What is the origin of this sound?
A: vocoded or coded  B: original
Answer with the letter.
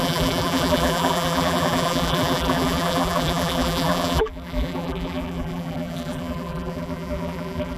A